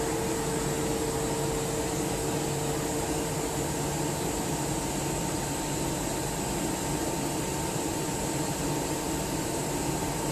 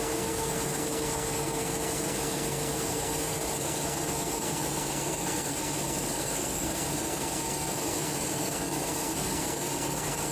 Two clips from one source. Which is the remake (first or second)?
second